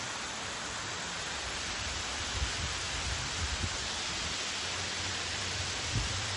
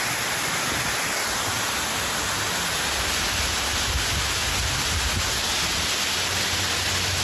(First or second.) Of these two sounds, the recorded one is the second